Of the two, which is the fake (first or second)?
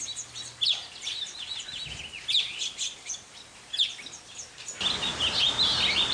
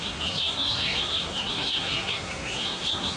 second